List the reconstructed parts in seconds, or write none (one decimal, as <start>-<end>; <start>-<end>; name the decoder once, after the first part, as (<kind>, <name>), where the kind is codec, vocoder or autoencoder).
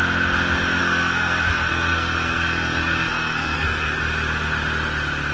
0.8-4.0 (codec, SNAC)